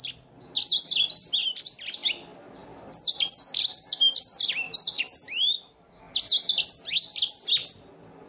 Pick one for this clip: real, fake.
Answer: real